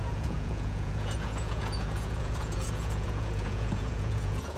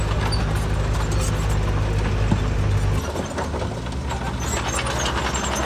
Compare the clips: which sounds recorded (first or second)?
second